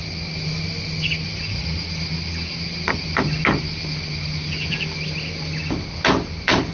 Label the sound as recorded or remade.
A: recorded